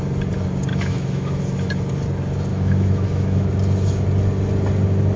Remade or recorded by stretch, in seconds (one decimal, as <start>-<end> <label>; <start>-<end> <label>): 0.0-0.7 recorded; 0.7-1.4 remade; 1.4-2.5 recorded; 2.5-3.5 remade; 3.5-5.2 recorded

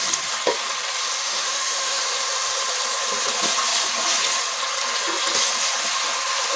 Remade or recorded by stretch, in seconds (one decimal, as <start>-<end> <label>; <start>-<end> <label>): 0.0-1.2 recorded; 1.2-2.0 remade; 2.0-6.6 recorded

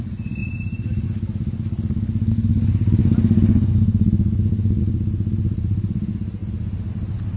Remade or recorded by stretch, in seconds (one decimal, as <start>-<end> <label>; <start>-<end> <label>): 0.0-7.4 recorded

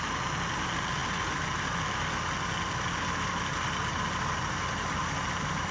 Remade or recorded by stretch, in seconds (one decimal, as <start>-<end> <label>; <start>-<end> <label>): 0.0-5.7 recorded

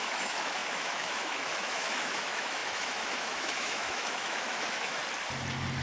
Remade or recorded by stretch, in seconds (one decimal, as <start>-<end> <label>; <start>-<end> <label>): 0.0-5.0 remade; 5.0-5.8 recorded

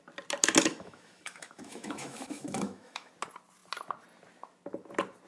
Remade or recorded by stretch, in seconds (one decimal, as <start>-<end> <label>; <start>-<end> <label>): 0.0-0.7 recorded; 0.7-3.1 remade; 3.1-5.3 recorded

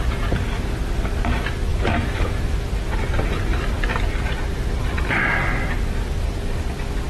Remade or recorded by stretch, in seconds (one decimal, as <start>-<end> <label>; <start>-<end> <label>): 0.0-1.7 recorded; 1.7-2.7 remade; 2.7-7.1 recorded

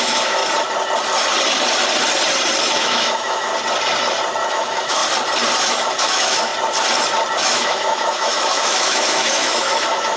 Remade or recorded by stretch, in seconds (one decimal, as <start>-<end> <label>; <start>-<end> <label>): 0.0-0.4 remade; 0.4-2.6 recorded; 2.6-3.5 remade; 3.5-4.5 recorded; 4.5-5.0 remade; 5.0-5.6 recorded; 5.6-6.5 remade; 6.5-7.4 recorded; 7.4-10.2 remade